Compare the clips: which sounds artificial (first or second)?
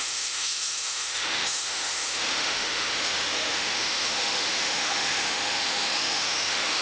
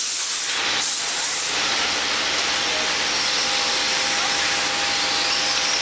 first